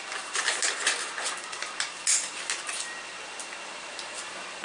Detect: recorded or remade recorded